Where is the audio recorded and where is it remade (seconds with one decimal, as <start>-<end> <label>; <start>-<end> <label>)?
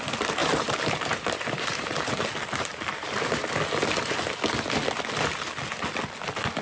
0.0-0.4 recorded; 0.4-2.1 remade; 2.1-2.7 recorded; 2.7-3.5 remade; 3.5-6.6 recorded